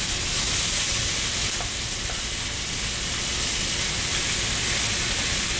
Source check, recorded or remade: recorded